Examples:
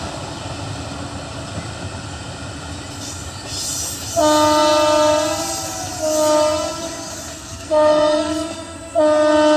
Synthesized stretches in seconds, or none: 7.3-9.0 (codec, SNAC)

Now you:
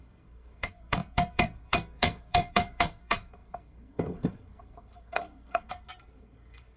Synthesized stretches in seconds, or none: 0.0-6.8 (codec, SNAC)